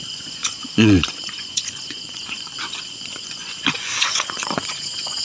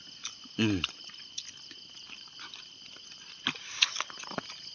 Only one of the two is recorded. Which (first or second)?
second